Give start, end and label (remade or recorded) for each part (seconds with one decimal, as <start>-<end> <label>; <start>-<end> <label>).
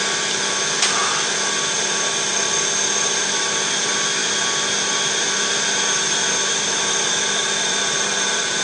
0.0-1.0 remade; 1.0-3.2 recorded; 3.2-4.2 remade; 4.2-4.7 recorded; 4.7-8.6 remade